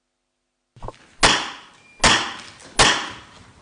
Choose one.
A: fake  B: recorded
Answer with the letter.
B